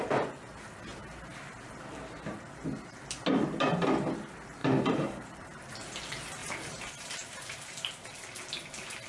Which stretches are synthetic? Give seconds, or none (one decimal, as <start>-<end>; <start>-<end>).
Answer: 4.6-5.7; 6.4-7.9